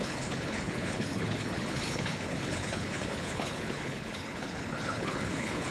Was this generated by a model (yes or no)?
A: yes